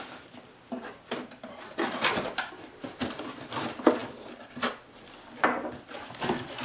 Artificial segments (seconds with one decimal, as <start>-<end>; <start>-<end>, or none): none